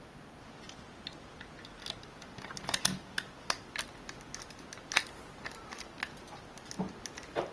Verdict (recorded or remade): recorded